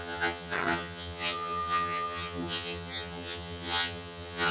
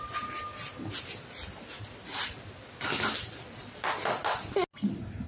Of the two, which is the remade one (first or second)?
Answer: first